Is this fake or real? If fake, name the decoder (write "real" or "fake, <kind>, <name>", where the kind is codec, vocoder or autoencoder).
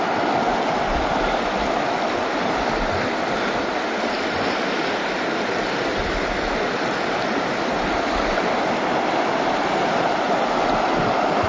real